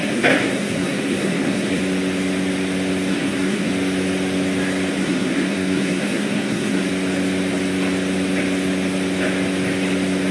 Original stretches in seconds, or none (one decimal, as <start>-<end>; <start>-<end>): 1.8-3.1; 3.7-4.9; 6.9-10.3